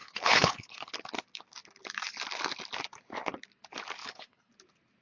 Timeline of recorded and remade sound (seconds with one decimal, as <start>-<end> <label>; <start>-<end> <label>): 0.0-0.9 remade; 0.9-4.0 recorded; 4.0-4.5 remade; 4.5-5.0 recorded